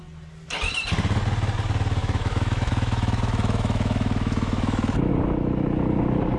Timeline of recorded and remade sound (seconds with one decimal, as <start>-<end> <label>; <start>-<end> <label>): 0.0-2.0 recorded; 2.0-5.1 remade; 5.1-6.4 recorded